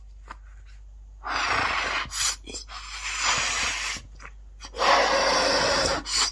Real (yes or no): yes